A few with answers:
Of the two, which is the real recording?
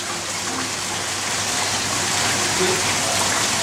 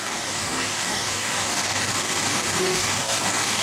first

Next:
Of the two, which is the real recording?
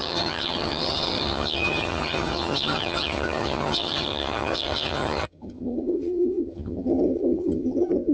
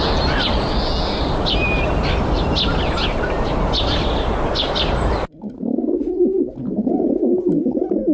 second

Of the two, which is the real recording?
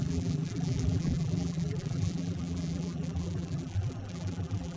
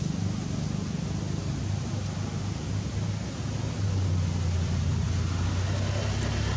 second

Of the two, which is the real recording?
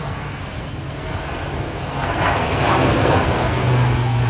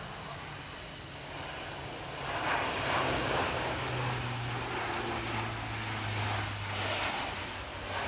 second